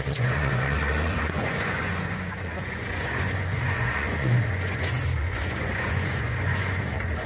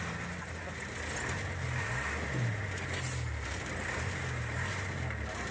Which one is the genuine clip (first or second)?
second